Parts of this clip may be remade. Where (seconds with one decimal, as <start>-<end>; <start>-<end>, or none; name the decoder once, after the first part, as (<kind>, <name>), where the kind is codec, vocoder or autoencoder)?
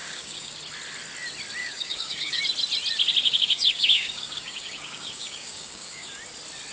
0.0-0.6 (codec, DAC); 1.6-2.4; 3.2-6.1